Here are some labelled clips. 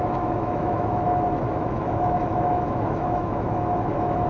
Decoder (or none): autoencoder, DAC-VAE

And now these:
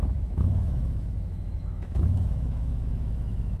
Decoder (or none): autoencoder, DAC-VAE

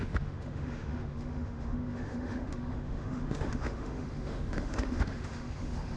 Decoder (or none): autoencoder, DAC-VAE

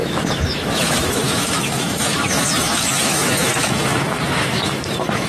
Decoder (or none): autoencoder, DAC-VAE